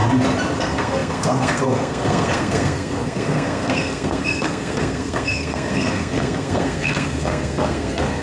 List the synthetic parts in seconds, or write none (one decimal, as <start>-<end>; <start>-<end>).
0.6-8.2